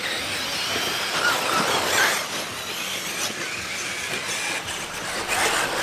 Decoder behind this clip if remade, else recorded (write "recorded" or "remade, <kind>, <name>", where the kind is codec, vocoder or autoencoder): recorded